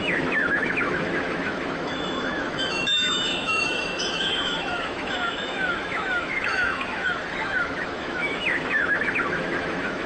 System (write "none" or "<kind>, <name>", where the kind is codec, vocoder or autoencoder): autoencoder, DAC-VAE